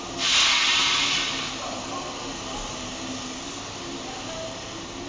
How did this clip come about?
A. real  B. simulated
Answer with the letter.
A